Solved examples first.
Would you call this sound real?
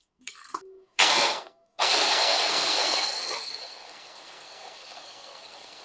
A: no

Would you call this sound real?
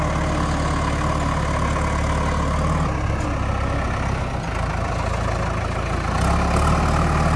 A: yes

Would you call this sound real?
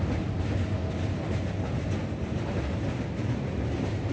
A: yes